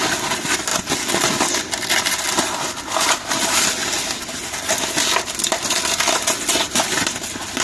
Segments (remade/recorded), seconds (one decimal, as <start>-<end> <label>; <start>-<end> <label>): 0.0-7.6 recorded